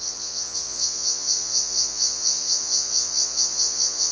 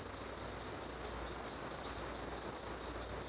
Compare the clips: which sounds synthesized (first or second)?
first